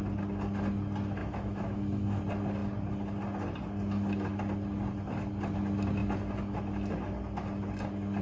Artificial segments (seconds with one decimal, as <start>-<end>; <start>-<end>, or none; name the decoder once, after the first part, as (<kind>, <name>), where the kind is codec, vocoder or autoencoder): 1.2-2.2 (autoencoder, DAC-VAE)